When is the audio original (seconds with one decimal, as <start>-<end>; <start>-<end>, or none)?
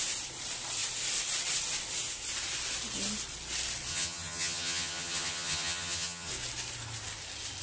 0.0-3.9; 6.3-7.6